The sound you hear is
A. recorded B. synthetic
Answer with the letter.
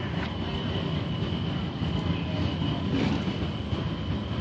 A